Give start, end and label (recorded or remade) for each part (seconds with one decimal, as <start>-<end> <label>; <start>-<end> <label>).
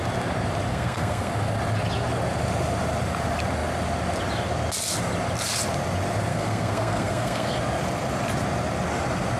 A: 0.0-0.7 recorded; 0.7-1.3 remade; 1.3-6.3 recorded; 6.3-7.6 remade; 7.6-9.4 recorded